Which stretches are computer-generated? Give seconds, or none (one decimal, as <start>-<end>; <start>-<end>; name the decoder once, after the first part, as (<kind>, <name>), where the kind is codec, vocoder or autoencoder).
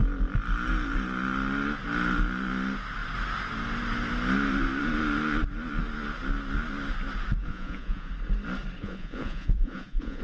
7.5-8.1 (vocoder, Vocos); 8.8-10.2